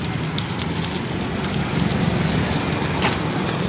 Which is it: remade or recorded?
recorded